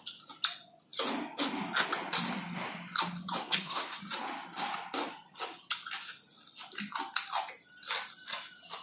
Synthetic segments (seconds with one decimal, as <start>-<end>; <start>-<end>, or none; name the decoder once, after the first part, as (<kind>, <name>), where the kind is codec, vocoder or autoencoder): 3.4-4.0 (codec, SNAC)